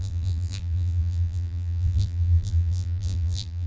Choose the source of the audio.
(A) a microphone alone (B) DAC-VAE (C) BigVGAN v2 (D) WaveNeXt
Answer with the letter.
C